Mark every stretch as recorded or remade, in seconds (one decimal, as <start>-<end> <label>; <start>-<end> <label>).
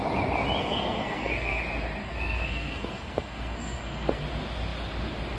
0.0-0.6 recorded; 0.6-1.6 remade; 1.6-2.0 recorded; 2.0-4.2 remade; 4.2-5.4 recorded